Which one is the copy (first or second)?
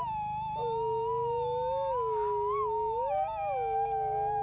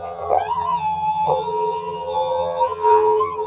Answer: second